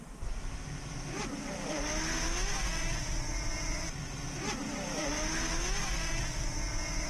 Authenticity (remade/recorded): recorded